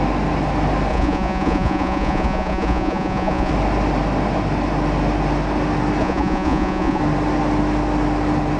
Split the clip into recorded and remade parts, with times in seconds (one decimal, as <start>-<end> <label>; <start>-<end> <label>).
0.0-0.9 recorded; 0.9-3.5 remade; 3.5-6.0 recorded; 6.0-7.0 remade; 7.0-8.6 recorded